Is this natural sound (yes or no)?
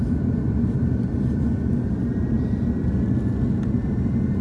yes